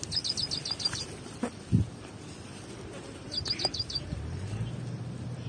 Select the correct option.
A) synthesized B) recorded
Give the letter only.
B